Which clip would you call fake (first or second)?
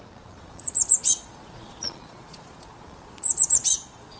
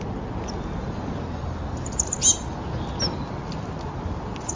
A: first